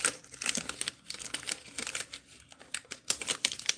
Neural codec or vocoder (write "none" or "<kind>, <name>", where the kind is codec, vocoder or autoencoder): none